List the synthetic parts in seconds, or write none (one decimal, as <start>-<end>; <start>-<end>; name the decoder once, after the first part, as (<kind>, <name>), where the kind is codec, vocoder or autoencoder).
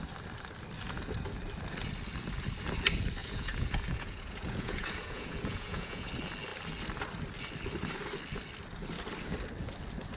3.2-6.1 (vocoder, Vocos)